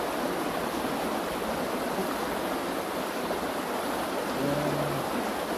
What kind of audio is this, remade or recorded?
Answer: recorded